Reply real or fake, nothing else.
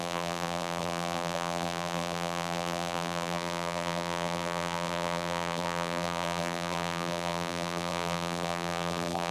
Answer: fake